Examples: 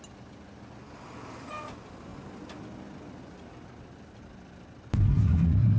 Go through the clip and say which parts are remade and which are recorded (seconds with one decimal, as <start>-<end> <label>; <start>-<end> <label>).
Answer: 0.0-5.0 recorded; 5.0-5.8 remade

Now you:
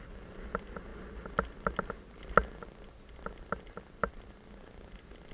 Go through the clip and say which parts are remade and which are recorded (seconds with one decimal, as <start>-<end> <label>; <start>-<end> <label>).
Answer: 0.0-5.3 recorded

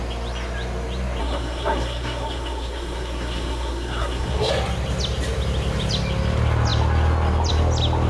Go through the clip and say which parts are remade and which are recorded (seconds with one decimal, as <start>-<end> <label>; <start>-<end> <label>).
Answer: 0.0-1.2 recorded; 1.2-4.5 remade; 4.5-8.1 recorded

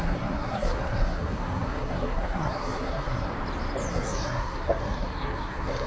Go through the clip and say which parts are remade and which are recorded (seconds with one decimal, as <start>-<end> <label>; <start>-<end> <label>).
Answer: 0.0-3.3 remade; 3.3-3.9 recorded; 3.9-5.9 remade